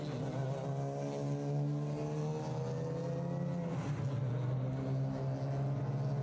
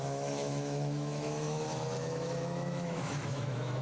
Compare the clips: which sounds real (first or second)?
first